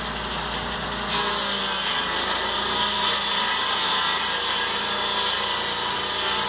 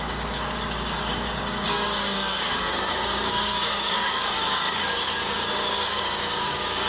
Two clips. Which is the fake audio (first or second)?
second